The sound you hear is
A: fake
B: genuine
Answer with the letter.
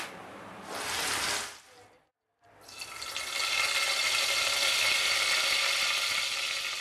B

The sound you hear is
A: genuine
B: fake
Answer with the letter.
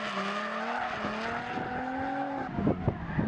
A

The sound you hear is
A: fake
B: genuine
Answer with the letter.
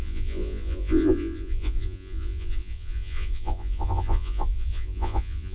A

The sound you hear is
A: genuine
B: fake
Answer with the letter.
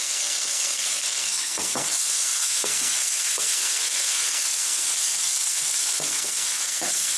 B